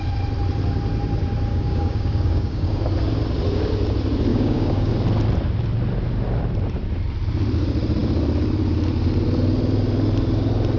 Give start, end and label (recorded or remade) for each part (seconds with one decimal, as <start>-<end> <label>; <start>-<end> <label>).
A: 0.0-1.5 recorded; 1.5-2.8 remade; 2.8-4.3 recorded; 4.3-4.9 remade; 4.9-10.8 recorded